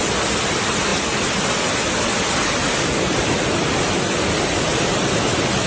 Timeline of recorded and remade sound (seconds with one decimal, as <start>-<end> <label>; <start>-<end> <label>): 0.0-5.7 recorded